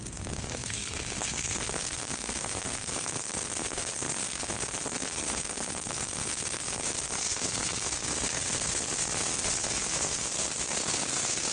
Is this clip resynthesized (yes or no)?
yes